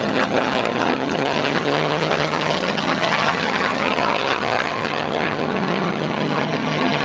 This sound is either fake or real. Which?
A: fake